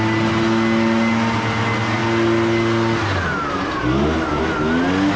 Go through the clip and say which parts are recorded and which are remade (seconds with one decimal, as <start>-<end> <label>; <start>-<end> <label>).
0.0-5.2 recorded